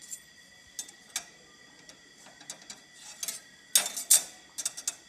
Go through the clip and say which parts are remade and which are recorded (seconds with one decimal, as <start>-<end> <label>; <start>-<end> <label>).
0.0-5.1 recorded